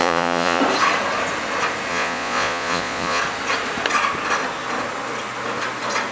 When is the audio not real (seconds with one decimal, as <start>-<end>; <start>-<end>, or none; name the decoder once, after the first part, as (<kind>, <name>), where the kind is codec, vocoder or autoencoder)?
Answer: 0.0-0.6 (vocoder, Vocos); 1.9-3.2